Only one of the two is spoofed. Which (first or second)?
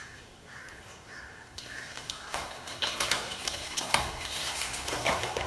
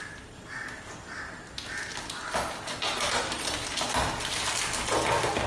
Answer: first